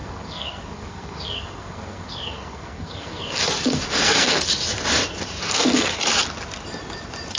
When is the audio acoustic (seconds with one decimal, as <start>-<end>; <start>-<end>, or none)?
4.4-5.4; 5.9-7.4